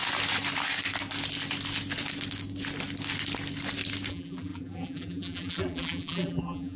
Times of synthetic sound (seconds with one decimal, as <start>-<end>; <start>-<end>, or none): 4.1-6.8